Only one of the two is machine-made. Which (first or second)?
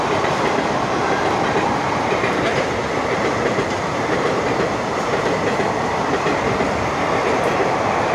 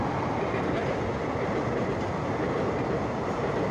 first